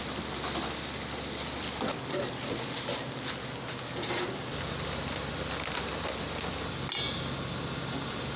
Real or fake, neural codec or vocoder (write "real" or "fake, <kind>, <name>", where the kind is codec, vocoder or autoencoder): real